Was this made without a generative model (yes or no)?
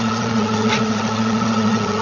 no